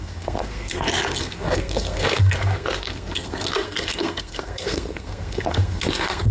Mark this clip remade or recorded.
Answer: remade